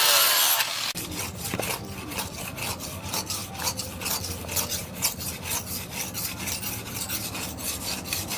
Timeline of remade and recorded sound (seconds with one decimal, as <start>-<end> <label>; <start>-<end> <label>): 0.0-8.4 recorded